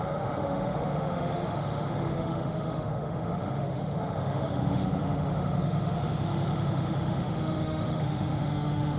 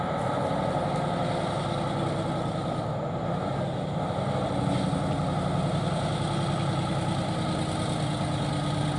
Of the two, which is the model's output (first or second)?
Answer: first